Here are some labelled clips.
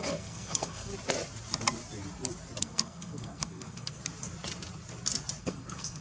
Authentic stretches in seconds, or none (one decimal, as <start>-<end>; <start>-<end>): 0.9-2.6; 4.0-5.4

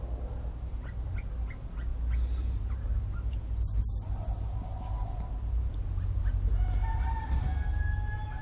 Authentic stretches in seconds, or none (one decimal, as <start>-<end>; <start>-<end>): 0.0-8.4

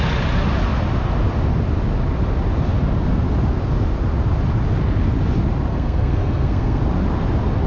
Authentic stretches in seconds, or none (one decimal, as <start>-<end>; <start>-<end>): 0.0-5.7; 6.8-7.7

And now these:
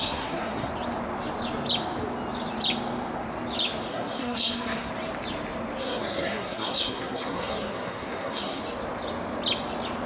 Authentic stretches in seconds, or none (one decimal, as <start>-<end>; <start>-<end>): 0.7-3.9; 4.9-5.8; 8.6-10.1